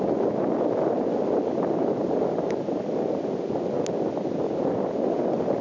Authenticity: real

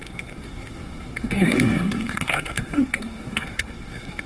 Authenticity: fake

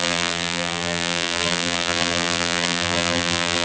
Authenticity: fake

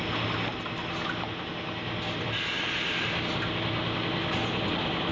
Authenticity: real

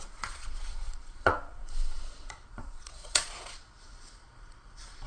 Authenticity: fake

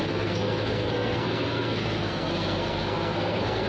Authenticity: fake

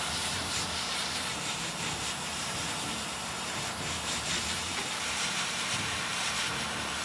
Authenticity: fake